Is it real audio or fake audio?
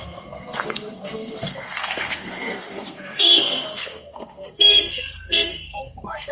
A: fake